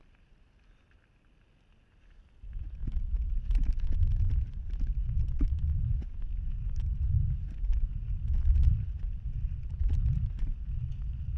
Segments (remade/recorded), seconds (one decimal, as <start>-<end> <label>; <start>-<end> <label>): 0.0-2.8 remade; 2.8-6.6 recorded; 6.6-11.4 remade